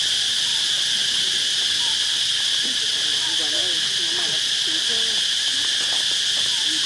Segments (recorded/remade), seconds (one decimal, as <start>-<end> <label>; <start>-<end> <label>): 0.0-6.9 recorded